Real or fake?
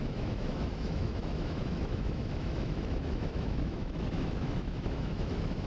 fake